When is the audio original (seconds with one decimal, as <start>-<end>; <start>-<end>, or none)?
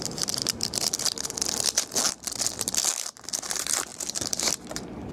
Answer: 0.0-5.1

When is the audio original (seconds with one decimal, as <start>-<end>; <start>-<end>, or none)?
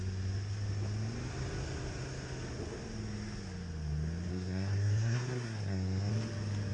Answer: 0.0-4.3; 6.1-6.7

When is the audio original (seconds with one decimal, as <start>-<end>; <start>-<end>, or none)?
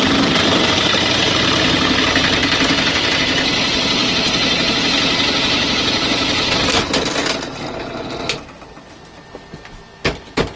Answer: 0.0-10.6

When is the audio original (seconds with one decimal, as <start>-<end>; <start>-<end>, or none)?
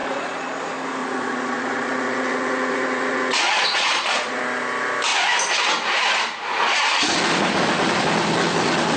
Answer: 0.6-1.0; 4.4-9.0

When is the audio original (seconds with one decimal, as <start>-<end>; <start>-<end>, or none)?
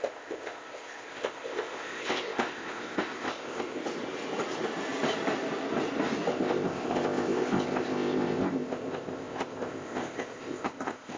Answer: 3.8-6.3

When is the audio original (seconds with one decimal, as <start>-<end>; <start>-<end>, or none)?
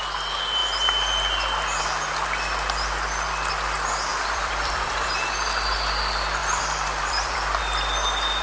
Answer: 0.0-4.1; 5.1-6.4; 7.6-8.4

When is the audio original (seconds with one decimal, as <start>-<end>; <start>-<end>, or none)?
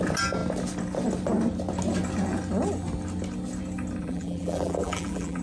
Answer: 0.0-4.0